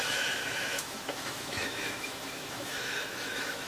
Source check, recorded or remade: remade